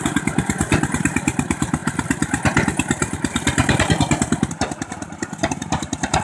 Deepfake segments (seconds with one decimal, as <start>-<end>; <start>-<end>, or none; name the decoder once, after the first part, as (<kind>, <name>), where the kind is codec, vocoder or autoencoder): none